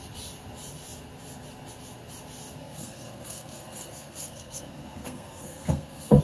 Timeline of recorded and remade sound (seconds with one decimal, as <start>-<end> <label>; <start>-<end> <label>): 0.0-2.6 recorded; 2.6-6.2 remade